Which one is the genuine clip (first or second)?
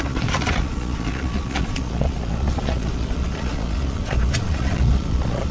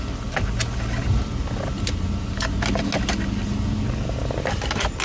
second